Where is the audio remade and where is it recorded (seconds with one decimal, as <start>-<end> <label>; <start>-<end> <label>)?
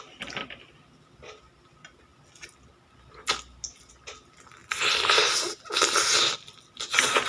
0.0-7.3 recorded